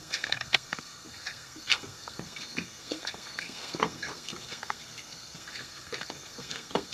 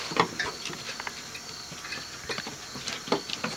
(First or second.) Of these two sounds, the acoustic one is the second